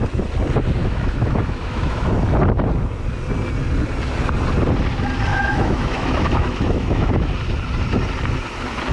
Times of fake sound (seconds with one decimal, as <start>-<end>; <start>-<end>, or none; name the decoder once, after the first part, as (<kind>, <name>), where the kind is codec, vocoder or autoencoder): 0.8-2.1 (autoencoder, DAC-VAE); 5.3-7.1